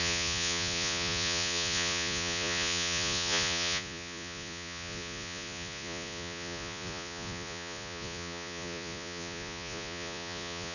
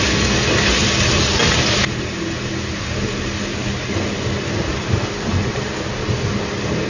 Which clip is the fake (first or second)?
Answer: first